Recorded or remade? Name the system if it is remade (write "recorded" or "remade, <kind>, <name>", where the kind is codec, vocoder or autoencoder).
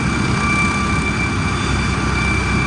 recorded